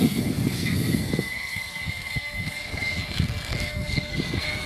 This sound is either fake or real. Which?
fake